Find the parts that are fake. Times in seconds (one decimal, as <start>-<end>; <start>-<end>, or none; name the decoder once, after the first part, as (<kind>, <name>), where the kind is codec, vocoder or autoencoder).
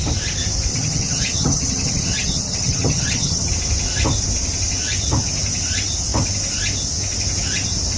0.7-3.5 (vocoder, HiFi-GAN)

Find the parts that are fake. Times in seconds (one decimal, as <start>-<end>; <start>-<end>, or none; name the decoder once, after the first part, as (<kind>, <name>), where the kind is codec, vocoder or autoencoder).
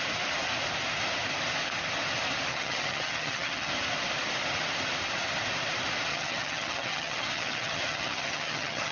2.5-3.7 (vocoder, HiFi-GAN); 6.1-8.9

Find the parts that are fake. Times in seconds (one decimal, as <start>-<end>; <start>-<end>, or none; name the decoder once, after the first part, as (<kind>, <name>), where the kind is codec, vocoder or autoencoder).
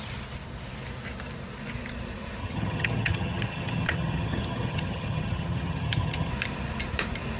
2.4-6.3 (vocoder, HiFi-GAN)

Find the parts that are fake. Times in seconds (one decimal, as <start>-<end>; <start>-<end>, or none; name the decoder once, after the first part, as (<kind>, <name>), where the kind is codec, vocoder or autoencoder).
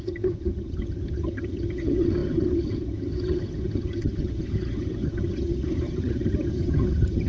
0.0-7.3 (vocoder, HiFi-GAN)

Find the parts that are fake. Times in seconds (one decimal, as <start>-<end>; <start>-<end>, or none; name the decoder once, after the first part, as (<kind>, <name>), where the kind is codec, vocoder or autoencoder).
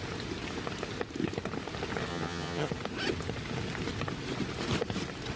2.1-2.7 (vocoder, HiFi-GAN)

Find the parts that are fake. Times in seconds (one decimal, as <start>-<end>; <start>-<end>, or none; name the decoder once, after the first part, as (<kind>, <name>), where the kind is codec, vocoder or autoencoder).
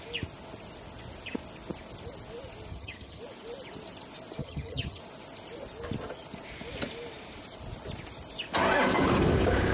2.7-3.2 (vocoder, HiFi-GAN); 4.4-5.0